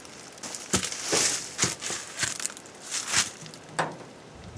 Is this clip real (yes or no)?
yes